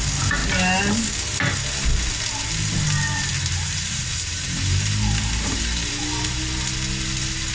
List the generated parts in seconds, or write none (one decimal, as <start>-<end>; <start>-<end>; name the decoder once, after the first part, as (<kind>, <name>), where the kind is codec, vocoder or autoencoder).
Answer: 3.3-6.0 (vocoder, BigVGAN v2)